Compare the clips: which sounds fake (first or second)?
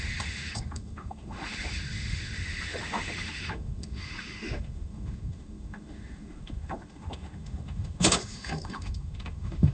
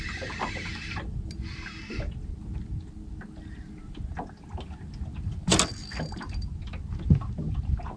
first